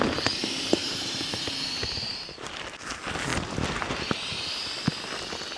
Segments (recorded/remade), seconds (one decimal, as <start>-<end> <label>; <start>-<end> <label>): 0.0-0.8 recorded; 0.8-1.4 remade; 1.4-5.6 recorded